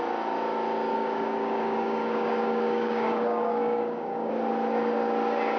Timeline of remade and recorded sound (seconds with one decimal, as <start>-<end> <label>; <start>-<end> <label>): 0.0-0.9 recorded; 0.9-4.3 remade; 4.3-5.6 recorded